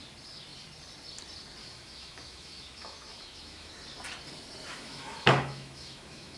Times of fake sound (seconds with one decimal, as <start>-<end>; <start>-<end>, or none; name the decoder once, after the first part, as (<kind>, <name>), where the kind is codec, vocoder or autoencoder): 1.6-3.7 (autoencoder, DAC-VAE); 4.7-6.4